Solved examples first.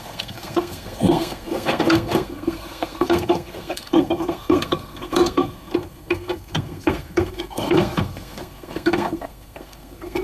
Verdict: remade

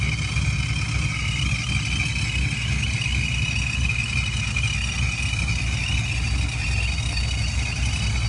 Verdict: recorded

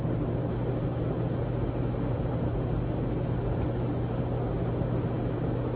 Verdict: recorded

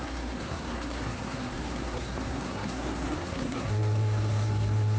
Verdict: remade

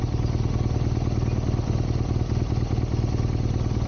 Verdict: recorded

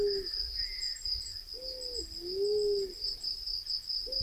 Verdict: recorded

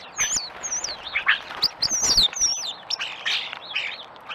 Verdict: recorded